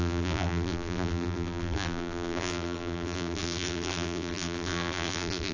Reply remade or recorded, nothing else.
remade